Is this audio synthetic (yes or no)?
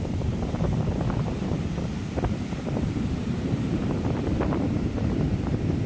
yes